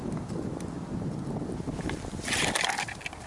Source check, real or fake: real